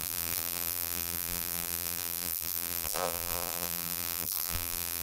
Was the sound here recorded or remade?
remade